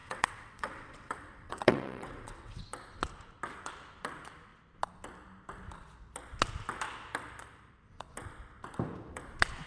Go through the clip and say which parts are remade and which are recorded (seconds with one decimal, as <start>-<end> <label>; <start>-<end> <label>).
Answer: 0.0-2.6 remade; 2.6-9.7 recorded